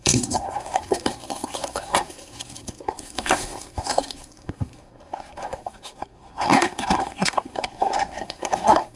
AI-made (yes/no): yes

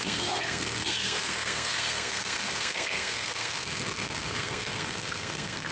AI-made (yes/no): yes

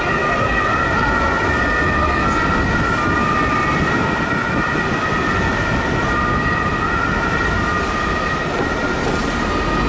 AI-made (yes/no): no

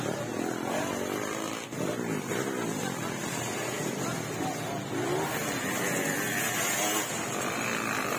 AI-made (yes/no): no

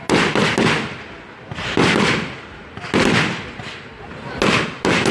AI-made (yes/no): no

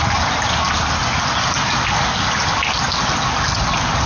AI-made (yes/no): no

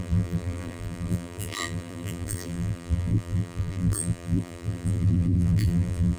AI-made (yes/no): yes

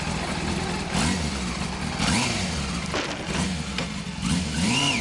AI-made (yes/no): no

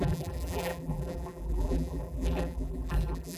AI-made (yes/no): yes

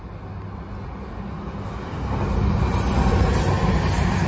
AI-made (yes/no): no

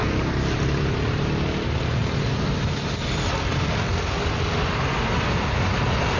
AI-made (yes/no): no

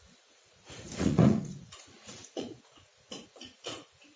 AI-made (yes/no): yes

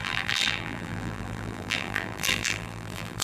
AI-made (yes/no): yes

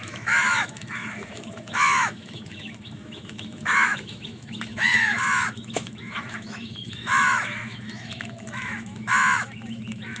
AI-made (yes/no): yes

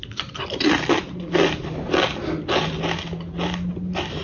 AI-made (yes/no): no